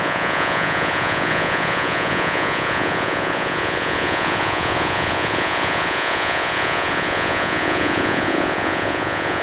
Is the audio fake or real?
fake